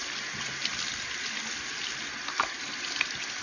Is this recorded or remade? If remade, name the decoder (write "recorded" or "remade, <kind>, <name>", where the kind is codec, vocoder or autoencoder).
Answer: recorded